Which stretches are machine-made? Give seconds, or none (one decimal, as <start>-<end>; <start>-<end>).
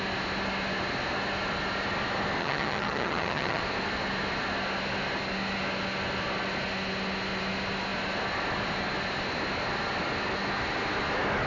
2.4-3.6